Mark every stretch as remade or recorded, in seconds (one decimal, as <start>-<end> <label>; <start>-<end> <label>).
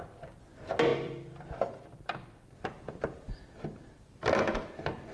0.0-0.9 recorded; 0.9-4.0 remade; 4.0-5.1 recorded